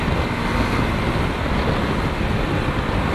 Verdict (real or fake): real